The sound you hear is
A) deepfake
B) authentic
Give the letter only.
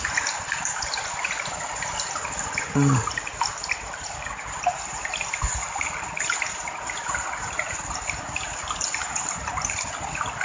B